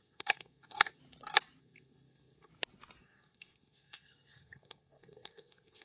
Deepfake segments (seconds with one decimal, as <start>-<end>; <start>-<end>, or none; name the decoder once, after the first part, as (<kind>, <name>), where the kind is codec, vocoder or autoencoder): 0.0-1.0 (codec, SNAC); 1.6-2.5; 3.0-5.8